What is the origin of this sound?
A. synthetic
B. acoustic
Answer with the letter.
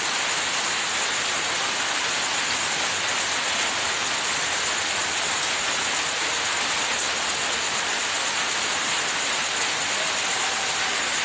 B